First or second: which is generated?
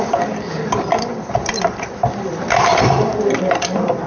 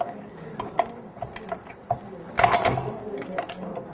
first